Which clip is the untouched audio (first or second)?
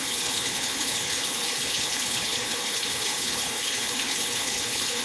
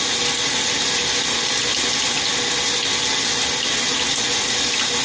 second